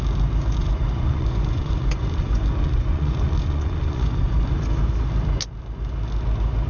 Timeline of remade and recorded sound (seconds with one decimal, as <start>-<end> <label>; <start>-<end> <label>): 0.0-0.6 recorded; 0.6-4.6 remade; 4.6-6.7 recorded